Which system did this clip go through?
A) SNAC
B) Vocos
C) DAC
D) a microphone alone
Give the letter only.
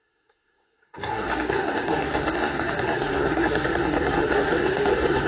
A